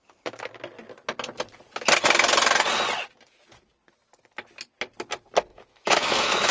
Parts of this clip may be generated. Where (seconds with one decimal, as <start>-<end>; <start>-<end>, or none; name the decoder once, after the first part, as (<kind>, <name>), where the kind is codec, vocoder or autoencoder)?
5.5-6.5 (autoencoder, DAC-VAE)